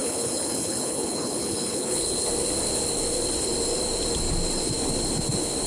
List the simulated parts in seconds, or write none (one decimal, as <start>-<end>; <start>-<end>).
0.0-2.3